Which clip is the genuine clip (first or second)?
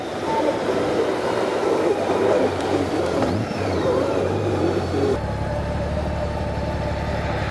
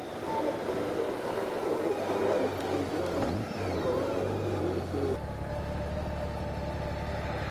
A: second